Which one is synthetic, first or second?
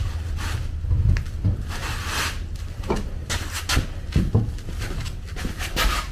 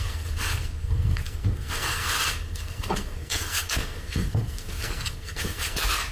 second